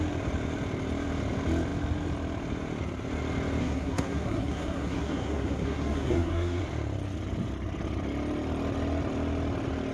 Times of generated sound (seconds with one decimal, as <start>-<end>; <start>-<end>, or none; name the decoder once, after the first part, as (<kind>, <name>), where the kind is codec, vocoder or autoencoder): 3.6-6.6 (codec, SNAC)